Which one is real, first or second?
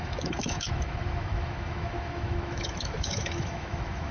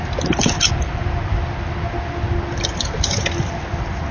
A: second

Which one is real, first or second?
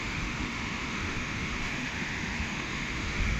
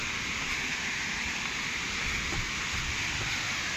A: second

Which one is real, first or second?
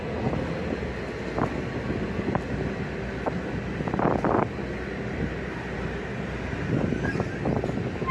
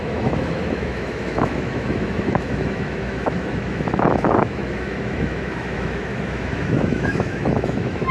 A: first